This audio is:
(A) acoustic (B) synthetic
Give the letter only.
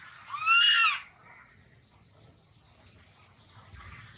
A